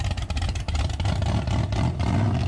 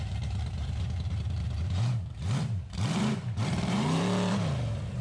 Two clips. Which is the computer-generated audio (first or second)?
second